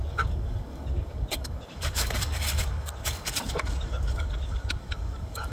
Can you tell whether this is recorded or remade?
remade